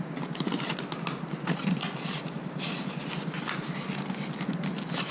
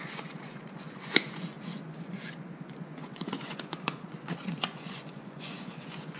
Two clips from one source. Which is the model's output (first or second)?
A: second